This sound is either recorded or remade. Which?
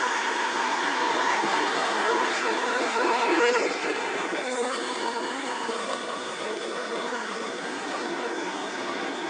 remade